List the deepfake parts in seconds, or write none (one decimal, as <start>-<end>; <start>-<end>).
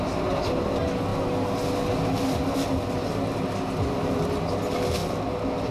none